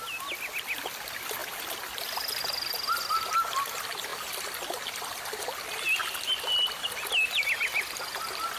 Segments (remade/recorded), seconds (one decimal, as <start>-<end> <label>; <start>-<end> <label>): 0.0-8.6 recorded